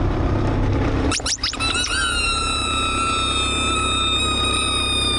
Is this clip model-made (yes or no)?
yes